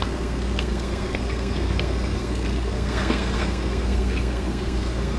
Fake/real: fake